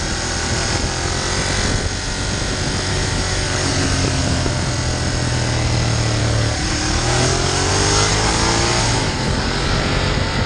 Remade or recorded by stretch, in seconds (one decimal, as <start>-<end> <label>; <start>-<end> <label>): 0.0-2.9 recorded; 2.9-4.2 remade; 4.2-6.2 recorded; 6.2-7.7 remade; 7.7-8.1 recorded; 8.1-9.8 remade; 9.8-10.5 recorded